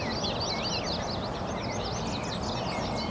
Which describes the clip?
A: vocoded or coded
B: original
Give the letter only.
B